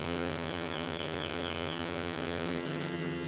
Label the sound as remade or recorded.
remade